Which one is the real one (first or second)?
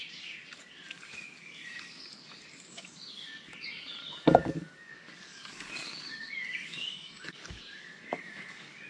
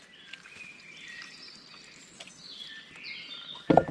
second